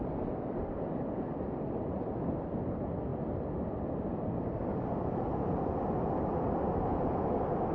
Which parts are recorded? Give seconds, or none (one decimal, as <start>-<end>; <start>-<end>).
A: 0.0-7.7